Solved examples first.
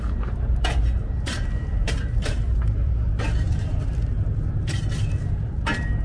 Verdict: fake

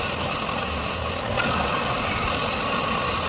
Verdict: real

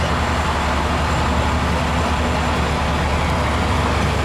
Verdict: real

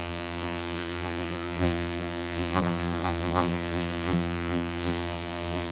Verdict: fake